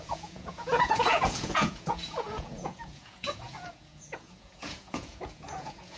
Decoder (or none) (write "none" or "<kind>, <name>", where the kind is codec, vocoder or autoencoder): vocoder, Vocos